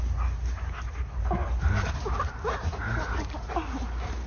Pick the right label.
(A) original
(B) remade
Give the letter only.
A